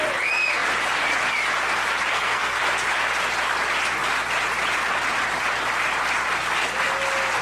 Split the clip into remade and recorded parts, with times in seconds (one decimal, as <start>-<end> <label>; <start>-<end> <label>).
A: 0.0-2.1 recorded; 2.1-2.6 remade; 2.6-7.4 recorded